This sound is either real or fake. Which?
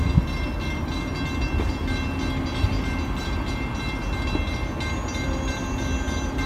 real